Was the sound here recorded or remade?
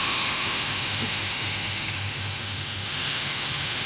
remade